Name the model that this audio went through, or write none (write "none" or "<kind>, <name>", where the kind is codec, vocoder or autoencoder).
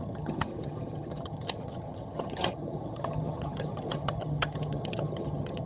vocoder, HiFi-GAN